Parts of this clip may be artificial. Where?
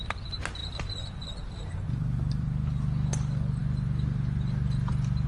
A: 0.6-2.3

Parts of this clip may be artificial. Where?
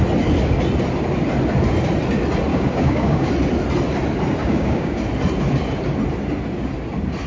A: 2.5-3.3; 4.4-5.0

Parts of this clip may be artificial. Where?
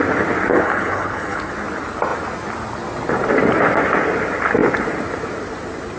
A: 0.5-1.5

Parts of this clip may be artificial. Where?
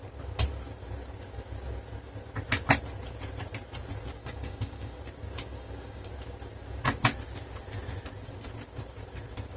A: 4.2-5.0; 5.5-6.1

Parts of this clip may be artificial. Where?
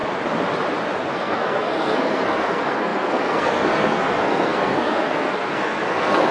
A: 1.0-6.3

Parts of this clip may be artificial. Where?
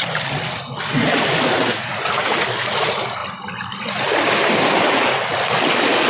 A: none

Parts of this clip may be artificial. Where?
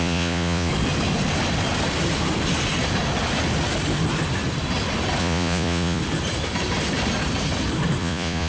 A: 0.0-0.7; 5.2-6.0; 8.0-8.5